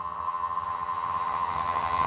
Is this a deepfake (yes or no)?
yes